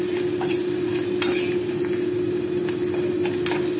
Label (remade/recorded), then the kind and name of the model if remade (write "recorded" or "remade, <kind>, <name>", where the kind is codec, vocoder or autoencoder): recorded